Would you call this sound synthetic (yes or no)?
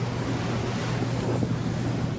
no